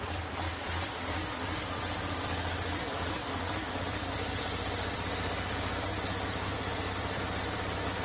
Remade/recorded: remade